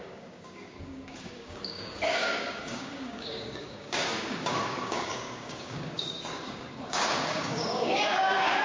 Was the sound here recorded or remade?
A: remade